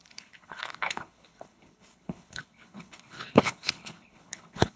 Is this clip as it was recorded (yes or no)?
no